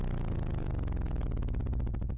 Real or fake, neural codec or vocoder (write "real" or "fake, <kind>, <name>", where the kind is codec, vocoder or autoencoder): real